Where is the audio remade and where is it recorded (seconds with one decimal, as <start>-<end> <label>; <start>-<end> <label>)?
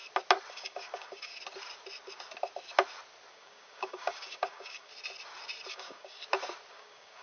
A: 0.0-0.5 recorded; 0.5-1.3 remade; 1.3-3.3 recorded; 3.3-4.9 remade; 4.9-5.7 recorded; 5.7-6.2 remade; 6.2-6.7 recorded; 6.7-7.2 remade